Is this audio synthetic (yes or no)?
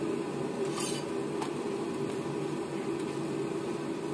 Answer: no